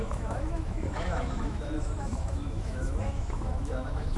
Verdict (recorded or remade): remade